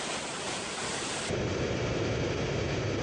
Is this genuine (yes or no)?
yes